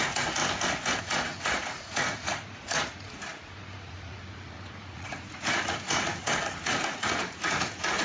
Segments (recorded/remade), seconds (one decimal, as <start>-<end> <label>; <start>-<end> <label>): 0.0-0.4 remade; 0.4-1.0 recorded; 1.0-8.0 remade